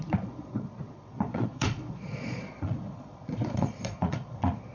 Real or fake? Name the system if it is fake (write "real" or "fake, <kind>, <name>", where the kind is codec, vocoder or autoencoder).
fake, vocoder, Vocos